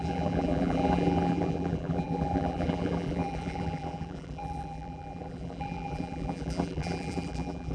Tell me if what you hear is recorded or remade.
remade